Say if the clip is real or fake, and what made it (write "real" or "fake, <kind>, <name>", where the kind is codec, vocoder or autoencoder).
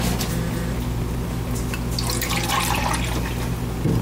real